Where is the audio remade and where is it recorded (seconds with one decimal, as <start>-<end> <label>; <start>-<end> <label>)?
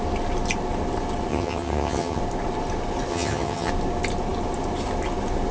0.0-1.3 recorded; 1.3-2.2 remade; 2.2-3.1 recorded; 3.1-3.7 remade; 3.7-5.5 recorded